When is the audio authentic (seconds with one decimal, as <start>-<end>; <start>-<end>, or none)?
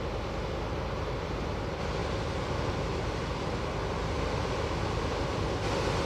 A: 0.0-6.1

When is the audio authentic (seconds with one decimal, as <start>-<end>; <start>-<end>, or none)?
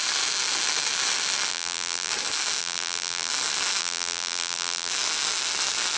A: 0.0-1.5; 2.1-2.6; 3.3-3.8; 4.9-6.0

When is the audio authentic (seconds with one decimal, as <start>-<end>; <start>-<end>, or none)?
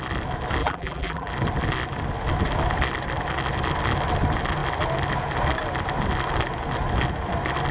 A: 0.0-0.6; 1.3-7.7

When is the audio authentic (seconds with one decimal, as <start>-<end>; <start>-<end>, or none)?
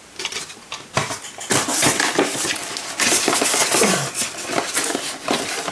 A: 0.0-5.7